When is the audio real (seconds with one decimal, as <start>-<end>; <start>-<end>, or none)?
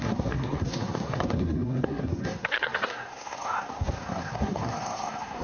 none